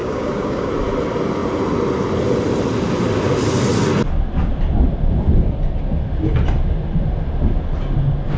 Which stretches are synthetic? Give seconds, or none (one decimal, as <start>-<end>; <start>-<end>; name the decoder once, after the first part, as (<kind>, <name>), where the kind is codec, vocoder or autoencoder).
0.0-0.7 (codec, DAC)